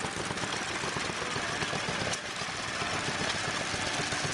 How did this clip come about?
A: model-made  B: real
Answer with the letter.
B